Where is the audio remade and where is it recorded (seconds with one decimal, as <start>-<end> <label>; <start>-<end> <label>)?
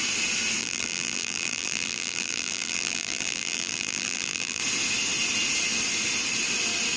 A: 0.0-0.6 recorded; 0.6-4.6 remade; 4.6-7.0 recorded